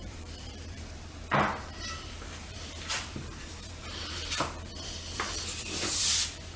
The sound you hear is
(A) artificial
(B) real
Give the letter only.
A